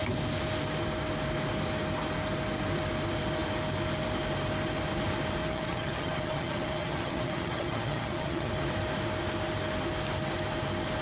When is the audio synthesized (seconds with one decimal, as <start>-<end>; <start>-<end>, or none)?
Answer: 5.4-8.5